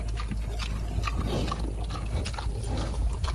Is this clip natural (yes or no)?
yes